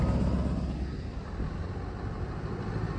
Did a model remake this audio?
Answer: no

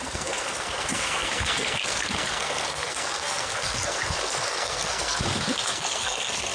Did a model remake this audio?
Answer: yes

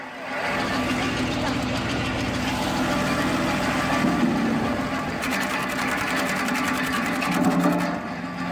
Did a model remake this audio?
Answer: no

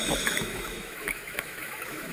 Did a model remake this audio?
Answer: yes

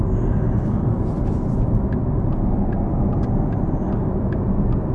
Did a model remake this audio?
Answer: no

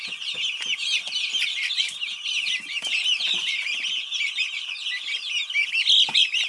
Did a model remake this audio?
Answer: no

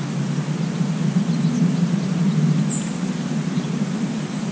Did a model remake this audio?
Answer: no